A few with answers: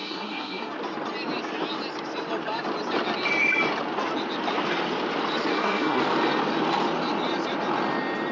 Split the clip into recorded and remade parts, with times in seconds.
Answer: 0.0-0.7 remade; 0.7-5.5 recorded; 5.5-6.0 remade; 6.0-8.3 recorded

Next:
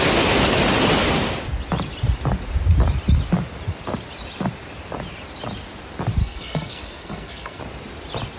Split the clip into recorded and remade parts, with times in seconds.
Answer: 0.0-6.2 recorded; 6.2-7.6 remade; 7.6-8.4 recorded

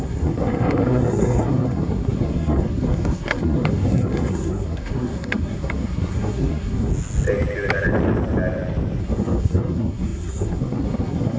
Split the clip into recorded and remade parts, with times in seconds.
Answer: 0.0-6.9 remade; 6.9-9.0 recorded; 9.0-11.4 remade